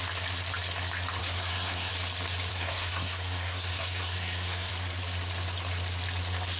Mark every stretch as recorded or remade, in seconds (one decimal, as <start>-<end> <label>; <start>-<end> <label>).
0.0-1.2 recorded; 1.2-1.9 remade; 1.9-2.5 recorded; 2.5-4.7 remade; 4.7-6.6 recorded